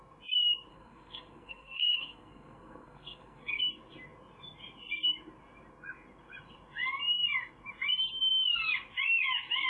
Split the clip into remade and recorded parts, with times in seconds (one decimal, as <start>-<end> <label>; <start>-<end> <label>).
0.0-0.7 recorded; 0.7-3.6 remade; 3.6-9.7 recorded